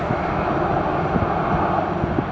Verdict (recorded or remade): recorded